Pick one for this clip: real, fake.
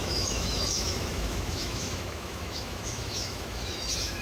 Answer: fake